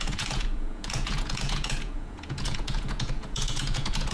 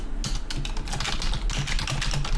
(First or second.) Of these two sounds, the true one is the second